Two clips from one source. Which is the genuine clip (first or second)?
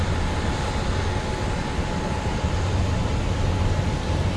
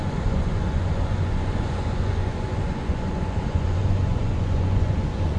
first